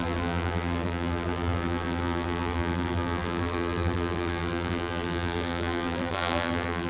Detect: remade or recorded remade